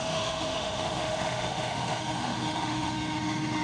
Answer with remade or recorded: remade